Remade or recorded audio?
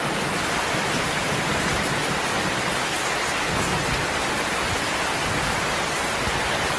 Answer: recorded